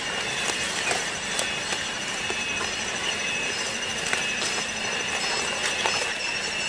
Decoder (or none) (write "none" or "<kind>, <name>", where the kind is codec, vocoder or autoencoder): none